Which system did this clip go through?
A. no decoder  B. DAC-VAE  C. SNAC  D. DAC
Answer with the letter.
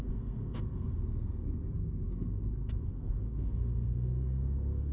C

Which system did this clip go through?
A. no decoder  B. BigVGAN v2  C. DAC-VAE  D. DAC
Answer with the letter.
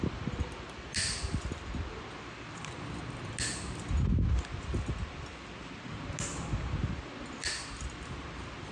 A